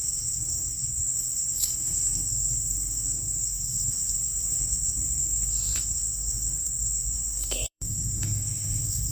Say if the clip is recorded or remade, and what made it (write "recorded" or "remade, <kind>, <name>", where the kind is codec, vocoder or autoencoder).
remade, codec, SNAC